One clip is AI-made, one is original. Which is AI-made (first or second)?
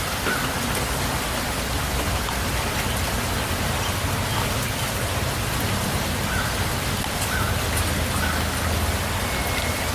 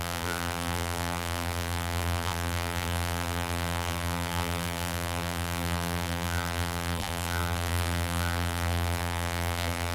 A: second